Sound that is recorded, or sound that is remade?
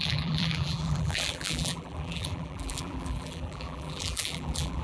remade